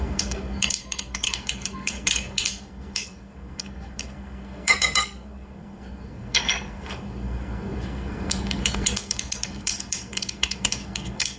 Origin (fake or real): fake